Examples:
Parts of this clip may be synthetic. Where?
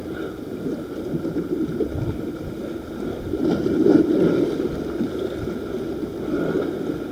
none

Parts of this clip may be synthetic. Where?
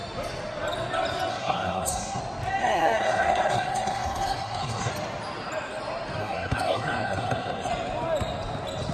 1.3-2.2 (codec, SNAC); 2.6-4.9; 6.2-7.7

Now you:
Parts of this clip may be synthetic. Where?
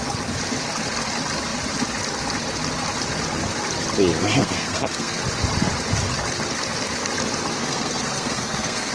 4.2-5.2 (codec, SNAC); 7.6-8.9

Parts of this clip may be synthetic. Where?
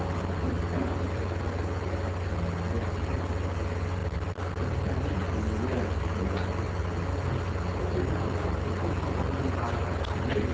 none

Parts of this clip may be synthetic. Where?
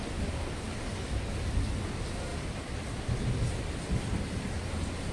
none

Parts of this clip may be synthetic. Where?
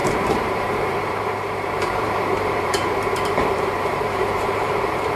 0.0-5.2 (vocoder, BigVGAN v2)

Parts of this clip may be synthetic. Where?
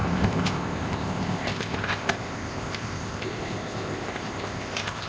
0.0-5.1 (codec, ZipCodec)